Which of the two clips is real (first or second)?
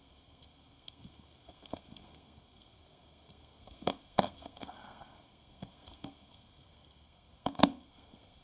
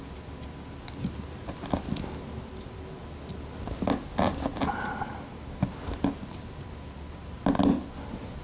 second